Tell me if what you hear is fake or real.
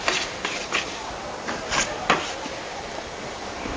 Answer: real